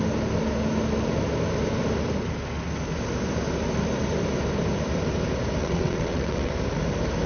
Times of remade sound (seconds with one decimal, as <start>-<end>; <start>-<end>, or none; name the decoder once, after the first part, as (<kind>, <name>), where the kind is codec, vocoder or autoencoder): 5.6-6.5 (vocoder, WaveNeXt)